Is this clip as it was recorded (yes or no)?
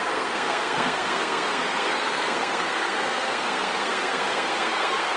no